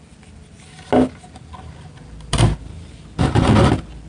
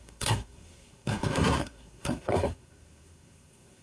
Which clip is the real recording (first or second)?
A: first